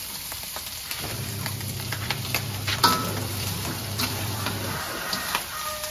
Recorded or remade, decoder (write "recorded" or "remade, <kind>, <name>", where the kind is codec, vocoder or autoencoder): remade, vocoder, BigVGAN v2